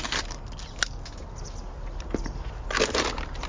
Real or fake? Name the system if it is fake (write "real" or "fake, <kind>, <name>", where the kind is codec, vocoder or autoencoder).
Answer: real